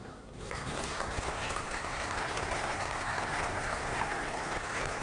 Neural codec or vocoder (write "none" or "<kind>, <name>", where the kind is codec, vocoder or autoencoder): codec, SNAC